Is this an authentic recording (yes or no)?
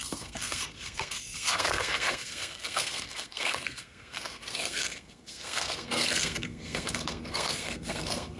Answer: no